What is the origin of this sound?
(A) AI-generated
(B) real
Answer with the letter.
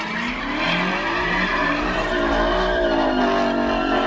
B